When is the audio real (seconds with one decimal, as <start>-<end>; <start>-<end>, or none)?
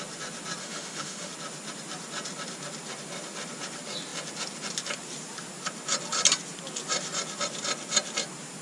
0.0-0.6; 1.3-8.6